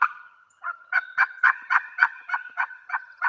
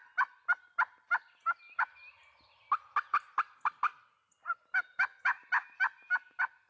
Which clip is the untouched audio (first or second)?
second